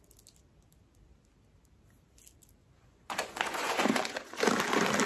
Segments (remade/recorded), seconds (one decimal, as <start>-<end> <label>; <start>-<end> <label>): 0.0-2.6 recorded; 2.6-4.4 remade; 4.4-5.1 recorded